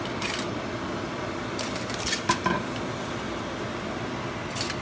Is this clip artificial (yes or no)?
no